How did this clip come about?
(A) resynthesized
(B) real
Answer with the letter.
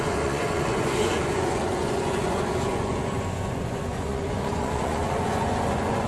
A